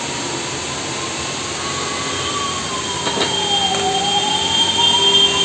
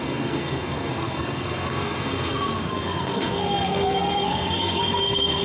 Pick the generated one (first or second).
second